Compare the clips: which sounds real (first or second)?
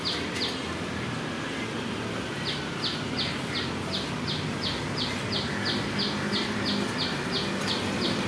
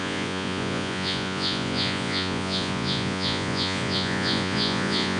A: first